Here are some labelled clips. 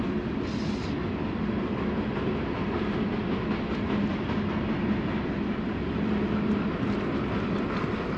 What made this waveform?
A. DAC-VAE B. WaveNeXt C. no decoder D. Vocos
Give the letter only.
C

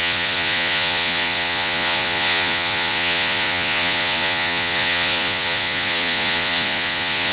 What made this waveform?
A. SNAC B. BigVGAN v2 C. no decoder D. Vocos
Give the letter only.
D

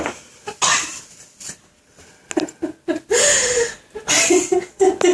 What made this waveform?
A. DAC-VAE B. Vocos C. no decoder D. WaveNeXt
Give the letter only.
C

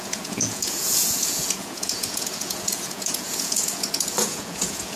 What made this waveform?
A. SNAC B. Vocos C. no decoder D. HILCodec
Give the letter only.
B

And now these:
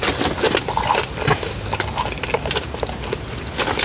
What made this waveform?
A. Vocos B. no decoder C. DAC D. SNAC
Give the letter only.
B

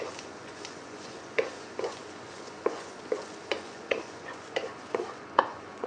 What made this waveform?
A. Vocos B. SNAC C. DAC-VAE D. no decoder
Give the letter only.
A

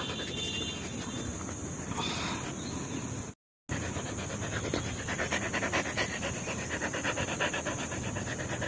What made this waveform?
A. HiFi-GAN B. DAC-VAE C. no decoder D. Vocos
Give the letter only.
C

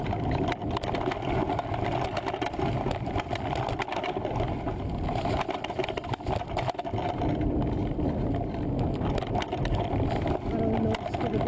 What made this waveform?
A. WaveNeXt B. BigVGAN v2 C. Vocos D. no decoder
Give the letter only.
D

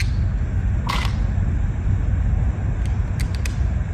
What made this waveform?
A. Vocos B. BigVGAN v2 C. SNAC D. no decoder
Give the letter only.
D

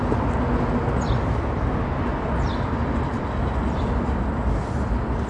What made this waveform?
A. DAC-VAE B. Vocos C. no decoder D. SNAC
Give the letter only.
C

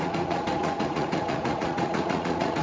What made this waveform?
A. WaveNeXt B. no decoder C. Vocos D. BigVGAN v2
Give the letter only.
C